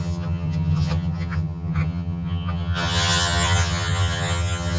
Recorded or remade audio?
remade